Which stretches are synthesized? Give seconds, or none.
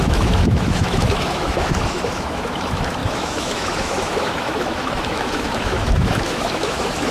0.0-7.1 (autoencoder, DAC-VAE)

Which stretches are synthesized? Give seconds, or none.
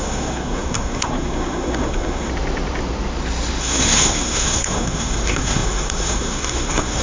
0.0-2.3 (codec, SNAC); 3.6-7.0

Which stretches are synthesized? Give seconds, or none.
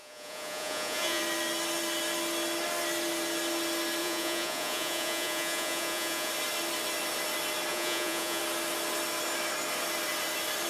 0.0-1.2 (vocoder, Vocos); 4.0-6.3; 7.7-8.4